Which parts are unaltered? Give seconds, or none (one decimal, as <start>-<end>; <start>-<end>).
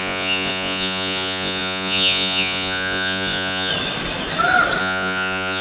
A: 3.7-4.8